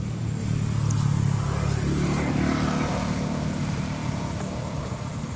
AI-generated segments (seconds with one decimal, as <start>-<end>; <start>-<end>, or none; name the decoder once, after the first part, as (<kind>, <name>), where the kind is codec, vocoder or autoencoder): none